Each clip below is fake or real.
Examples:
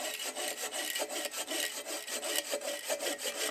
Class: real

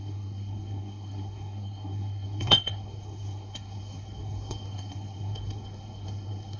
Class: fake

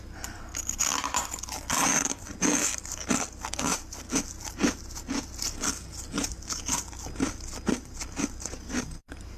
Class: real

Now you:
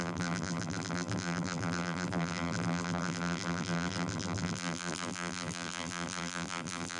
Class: fake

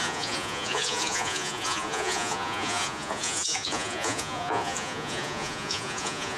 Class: fake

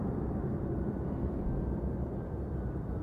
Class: real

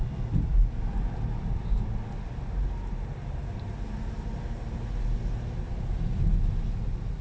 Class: real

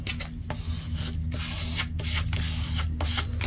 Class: real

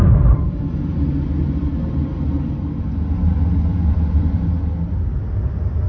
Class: real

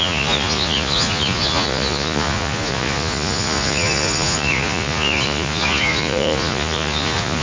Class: fake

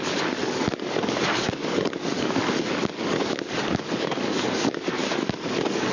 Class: fake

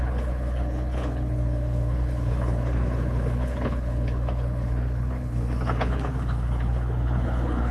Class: fake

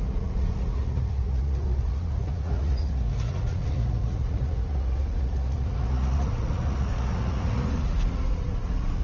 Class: fake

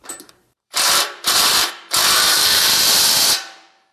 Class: fake